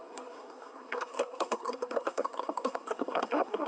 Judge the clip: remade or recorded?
remade